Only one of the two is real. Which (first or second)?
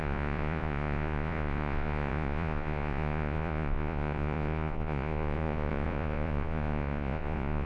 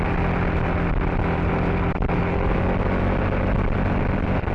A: second